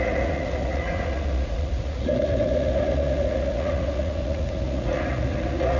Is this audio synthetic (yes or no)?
yes